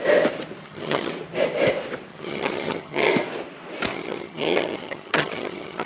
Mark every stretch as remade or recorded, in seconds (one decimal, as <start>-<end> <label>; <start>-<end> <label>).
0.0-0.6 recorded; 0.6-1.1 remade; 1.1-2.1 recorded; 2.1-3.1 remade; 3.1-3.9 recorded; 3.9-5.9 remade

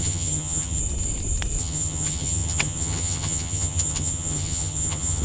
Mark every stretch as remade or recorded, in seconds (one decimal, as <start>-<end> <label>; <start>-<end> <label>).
0.0-0.8 remade; 0.8-1.6 recorded; 1.6-5.2 remade

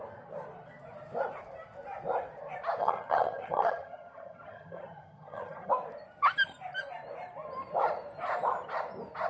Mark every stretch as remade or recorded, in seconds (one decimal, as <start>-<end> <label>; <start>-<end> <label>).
0.0-2.8 recorded; 2.8-5.7 remade; 5.7-9.3 recorded

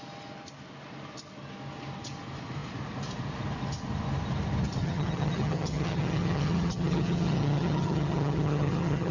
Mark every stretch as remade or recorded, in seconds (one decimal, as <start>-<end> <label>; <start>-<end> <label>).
0.0-4.8 recorded; 4.8-9.1 remade

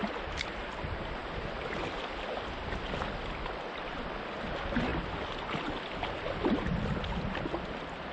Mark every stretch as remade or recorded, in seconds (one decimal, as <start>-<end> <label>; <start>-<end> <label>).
0.0-8.1 recorded

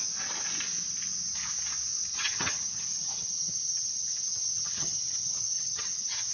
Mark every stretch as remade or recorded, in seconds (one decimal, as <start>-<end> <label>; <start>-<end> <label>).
0.0-2.1 recorded; 2.1-6.3 remade